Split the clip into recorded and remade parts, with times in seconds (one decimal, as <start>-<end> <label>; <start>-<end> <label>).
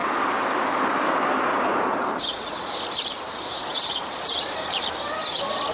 0.0-1.5 recorded; 1.5-4.9 remade; 4.9-5.7 recorded